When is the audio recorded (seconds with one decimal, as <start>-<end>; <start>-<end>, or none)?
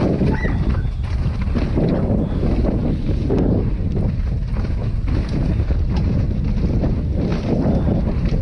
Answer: 0.0-8.4